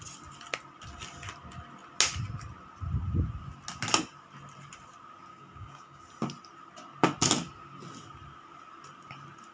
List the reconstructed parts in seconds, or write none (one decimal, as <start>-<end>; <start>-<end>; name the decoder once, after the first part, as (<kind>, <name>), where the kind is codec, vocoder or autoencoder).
5.3-6.0 (codec, DAC)